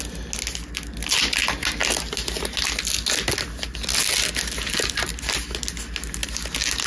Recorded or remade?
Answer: recorded